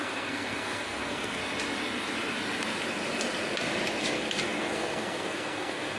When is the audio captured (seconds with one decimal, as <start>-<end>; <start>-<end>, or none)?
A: 1.4-4.0